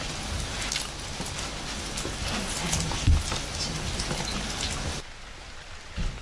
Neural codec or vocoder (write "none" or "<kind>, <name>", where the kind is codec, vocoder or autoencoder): none